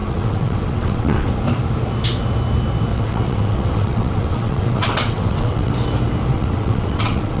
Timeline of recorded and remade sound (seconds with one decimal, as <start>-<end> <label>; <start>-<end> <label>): 0.0-1.3 remade; 1.3-2.9 recorded; 2.9-5.7 remade; 5.7-6.3 recorded; 6.3-7.4 remade